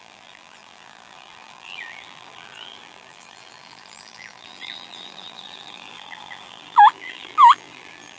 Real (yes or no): no